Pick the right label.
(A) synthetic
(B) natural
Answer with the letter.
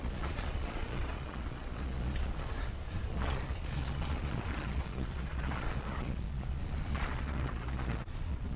A